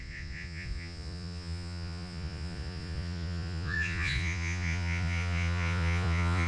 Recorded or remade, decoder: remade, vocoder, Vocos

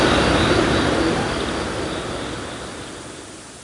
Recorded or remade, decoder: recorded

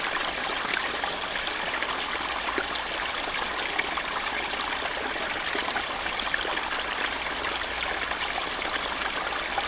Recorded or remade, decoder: recorded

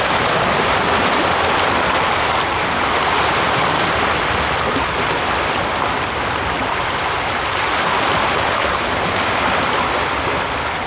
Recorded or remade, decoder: recorded